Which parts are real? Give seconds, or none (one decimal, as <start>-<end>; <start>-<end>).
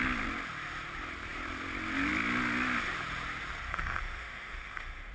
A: 0.0-3.7